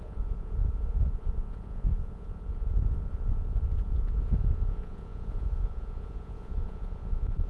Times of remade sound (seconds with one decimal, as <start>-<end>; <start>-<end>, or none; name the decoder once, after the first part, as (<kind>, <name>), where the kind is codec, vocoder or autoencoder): 0.0-7.5 (vocoder, Vocos)